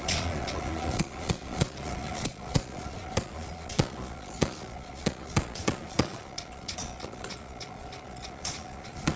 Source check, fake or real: fake